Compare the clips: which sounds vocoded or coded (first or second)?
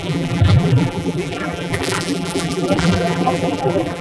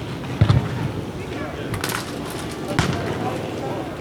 first